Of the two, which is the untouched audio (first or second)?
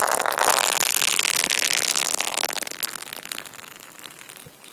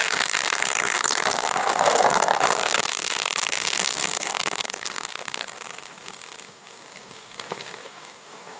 first